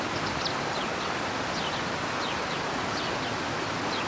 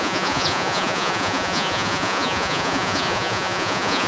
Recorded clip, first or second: first